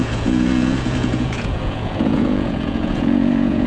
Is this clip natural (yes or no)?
no